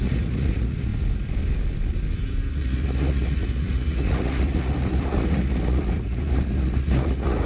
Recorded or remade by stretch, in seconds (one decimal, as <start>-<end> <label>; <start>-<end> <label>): 0.0-0.9 remade; 0.9-2.5 recorded; 2.5-7.5 remade